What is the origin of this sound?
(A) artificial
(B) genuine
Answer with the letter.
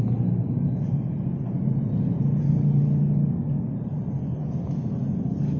B